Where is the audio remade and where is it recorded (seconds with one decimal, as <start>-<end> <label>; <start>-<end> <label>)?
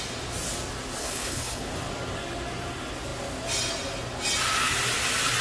0.0-1.0 recorded; 1.0-1.7 remade; 1.7-5.4 recorded